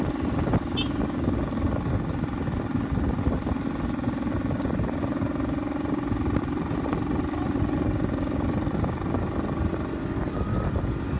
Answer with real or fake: real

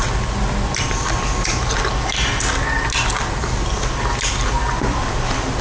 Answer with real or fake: real